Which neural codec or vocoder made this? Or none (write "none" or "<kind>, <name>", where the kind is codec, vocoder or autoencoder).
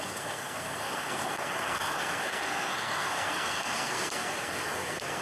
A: codec, SNAC